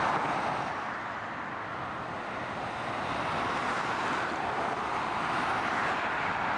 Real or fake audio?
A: real